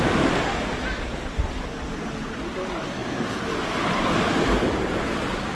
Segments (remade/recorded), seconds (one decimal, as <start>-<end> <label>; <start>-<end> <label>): 0.0-5.5 recorded